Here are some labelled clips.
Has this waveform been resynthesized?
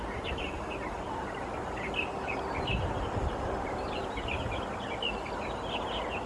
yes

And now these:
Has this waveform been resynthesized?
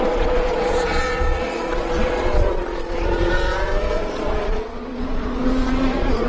yes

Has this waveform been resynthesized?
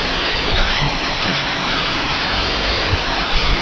yes